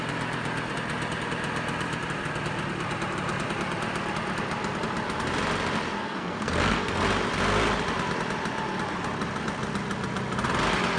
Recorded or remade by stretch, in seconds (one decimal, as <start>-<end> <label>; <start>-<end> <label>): 0.0-6.0 recorded; 6.0-7.0 remade; 7.0-11.0 recorded